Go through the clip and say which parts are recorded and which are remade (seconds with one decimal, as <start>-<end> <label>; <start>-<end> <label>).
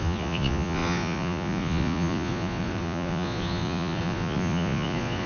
0.0-5.3 remade